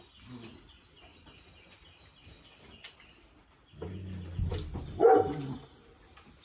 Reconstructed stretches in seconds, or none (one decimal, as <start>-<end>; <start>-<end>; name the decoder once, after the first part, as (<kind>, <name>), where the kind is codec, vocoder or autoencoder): none

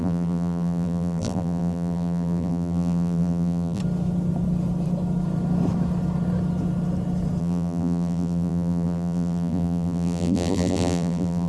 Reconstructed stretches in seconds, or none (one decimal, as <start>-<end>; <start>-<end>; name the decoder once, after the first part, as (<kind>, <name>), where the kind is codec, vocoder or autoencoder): 0.0-3.8 (vocoder, BigVGAN v2); 7.4-11.5

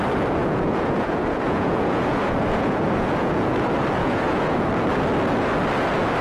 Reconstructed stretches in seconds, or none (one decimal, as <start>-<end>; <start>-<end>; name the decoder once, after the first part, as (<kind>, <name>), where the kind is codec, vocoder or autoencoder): 0.4-3.5 (vocoder, Vocos); 4.0-4.7